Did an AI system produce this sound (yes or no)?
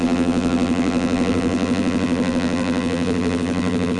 yes